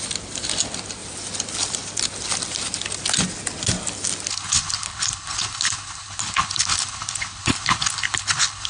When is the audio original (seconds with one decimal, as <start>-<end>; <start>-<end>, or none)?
0.0-4.3